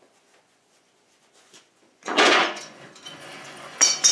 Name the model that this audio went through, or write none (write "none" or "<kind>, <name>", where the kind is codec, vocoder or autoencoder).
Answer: vocoder, Vocos